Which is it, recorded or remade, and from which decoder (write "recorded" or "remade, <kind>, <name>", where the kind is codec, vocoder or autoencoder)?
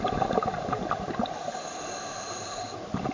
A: recorded